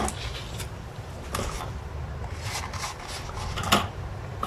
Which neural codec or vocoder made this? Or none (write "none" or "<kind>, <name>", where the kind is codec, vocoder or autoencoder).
none